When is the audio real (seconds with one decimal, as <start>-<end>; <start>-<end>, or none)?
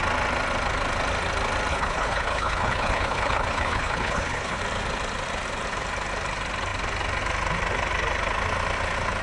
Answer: 0.0-1.7; 4.6-9.2